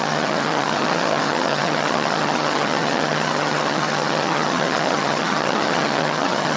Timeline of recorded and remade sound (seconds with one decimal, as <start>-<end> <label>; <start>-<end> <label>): 0.0-6.6 remade